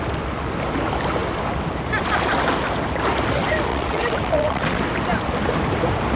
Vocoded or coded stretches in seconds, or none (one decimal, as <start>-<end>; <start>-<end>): 3.7-4.8